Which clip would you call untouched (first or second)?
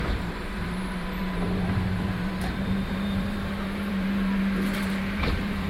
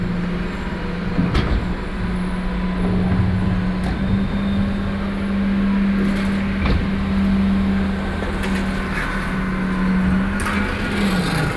second